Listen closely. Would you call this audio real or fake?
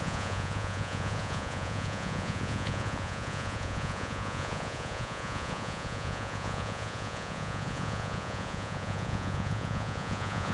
fake